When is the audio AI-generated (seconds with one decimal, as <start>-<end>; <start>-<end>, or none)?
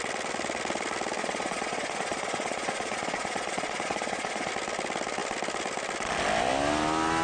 1.2-4.5